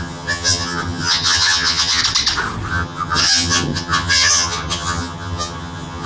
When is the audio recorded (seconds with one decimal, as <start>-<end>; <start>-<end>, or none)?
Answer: 2.0-2.7